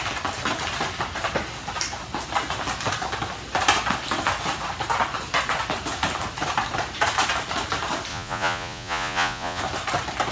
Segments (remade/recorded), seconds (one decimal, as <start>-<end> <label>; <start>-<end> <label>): 0.0-8.1 recorded; 8.1-9.6 remade; 9.6-10.3 recorded